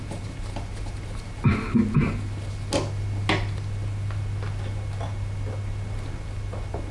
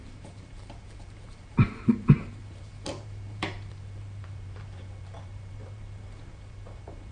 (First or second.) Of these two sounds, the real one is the first